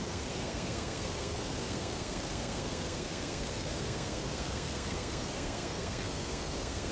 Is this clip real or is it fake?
fake